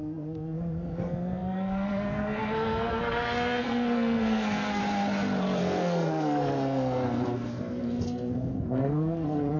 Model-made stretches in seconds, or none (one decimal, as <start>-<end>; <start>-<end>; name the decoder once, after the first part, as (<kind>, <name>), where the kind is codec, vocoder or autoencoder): 0.0-4.8 (codec, SNAC); 5.6-9.6